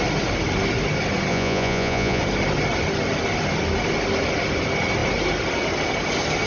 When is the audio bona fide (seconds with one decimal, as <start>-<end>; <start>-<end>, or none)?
0.0-1.3; 2.2-6.5